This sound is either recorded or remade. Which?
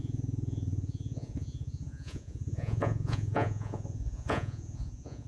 remade